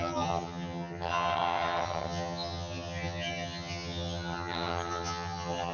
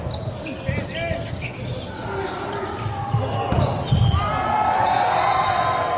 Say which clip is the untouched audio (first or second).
second